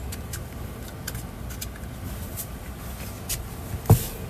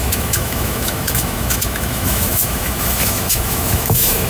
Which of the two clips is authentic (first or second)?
first